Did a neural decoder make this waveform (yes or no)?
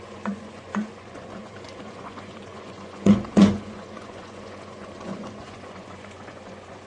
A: yes